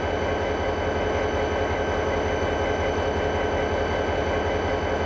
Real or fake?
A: real